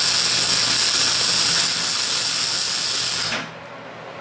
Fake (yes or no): no